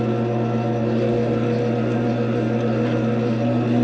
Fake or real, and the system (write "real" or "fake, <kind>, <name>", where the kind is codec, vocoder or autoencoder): real